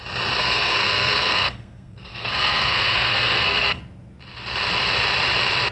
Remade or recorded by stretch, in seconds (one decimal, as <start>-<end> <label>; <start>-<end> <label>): 0.0-0.4 recorded; 0.4-3.8 remade; 3.8-5.7 recorded